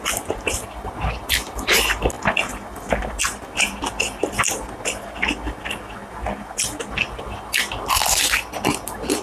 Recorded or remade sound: recorded